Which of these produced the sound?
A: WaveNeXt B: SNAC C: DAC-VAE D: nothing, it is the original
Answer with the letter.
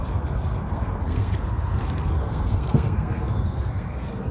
B